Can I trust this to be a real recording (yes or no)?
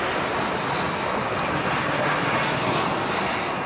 yes